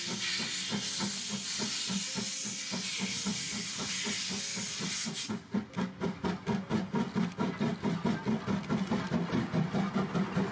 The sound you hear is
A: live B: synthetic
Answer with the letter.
A